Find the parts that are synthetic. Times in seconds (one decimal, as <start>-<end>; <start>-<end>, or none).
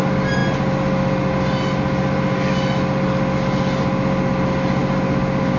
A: none